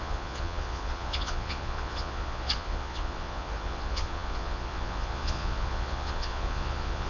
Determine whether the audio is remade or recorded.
remade